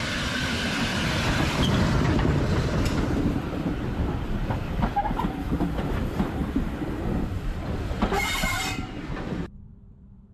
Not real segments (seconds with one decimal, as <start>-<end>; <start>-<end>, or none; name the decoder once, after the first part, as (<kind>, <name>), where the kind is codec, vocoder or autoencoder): 0.0-6.4 (vocoder, BigVGAN v2); 7.1-10.3